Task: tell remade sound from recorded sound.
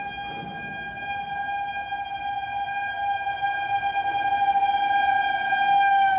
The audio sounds recorded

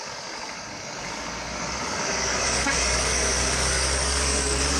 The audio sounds remade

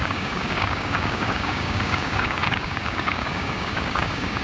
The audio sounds remade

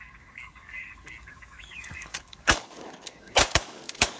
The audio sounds remade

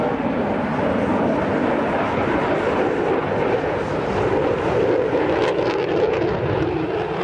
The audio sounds recorded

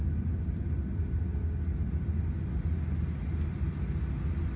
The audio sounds recorded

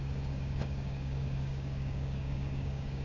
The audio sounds remade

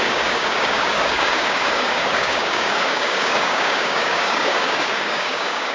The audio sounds remade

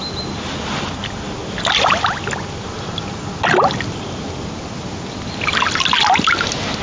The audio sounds recorded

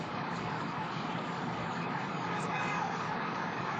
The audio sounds remade